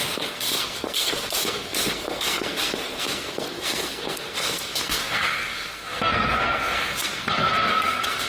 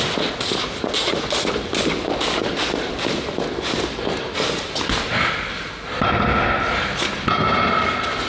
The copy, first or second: first